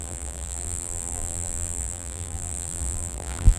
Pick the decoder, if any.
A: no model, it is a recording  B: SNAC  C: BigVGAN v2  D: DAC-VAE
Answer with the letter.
C